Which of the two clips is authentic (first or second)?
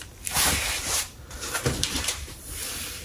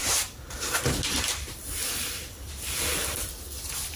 second